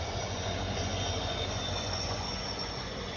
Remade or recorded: remade